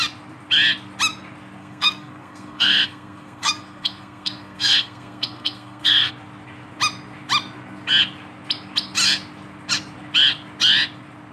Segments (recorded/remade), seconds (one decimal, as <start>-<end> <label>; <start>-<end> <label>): 0.0-1.6 recorded; 1.6-6.1 remade; 6.1-11.3 recorded